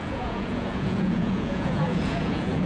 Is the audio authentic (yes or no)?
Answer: no